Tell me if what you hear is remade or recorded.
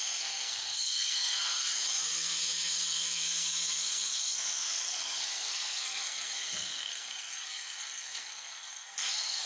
remade